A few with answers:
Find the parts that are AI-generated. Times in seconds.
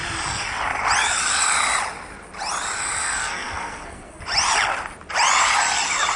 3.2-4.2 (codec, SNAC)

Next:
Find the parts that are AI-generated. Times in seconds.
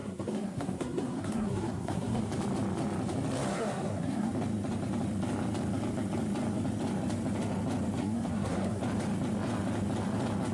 0.0-2.2 (codec, SNAC); 3.5-4.3; 8.0-8.8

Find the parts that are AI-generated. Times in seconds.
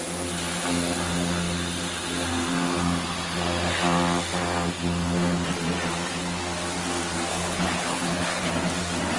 7.3-8.5 (codec, HILCodec)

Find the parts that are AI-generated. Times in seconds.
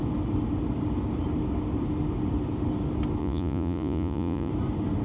3.2-4.5 (vocoder, Vocos)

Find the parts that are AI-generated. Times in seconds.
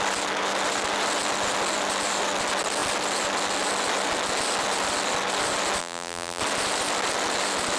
5.8-6.4 (vocoder, BigVGAN v2)